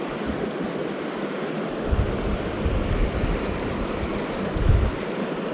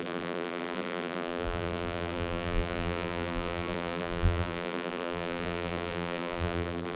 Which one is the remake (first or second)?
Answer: second